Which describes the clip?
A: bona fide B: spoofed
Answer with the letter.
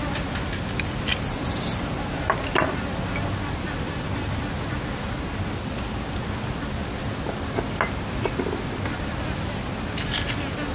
A